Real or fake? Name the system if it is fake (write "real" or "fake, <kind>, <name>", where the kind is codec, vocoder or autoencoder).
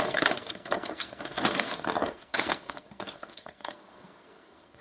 fake, codec, SNAC